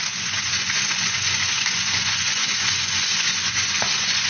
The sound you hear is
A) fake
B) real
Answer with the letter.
A